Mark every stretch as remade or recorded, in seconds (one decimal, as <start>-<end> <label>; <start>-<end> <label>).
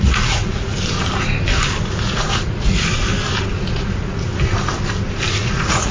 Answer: 0.0-0.7 remade; 0.7-1.8 recorded; 1.8-3.1 remade; 3.1-3.7 recorded; 3.7-4.3 remade; 4.3-5.4 recorded; 5.4-5.9 remade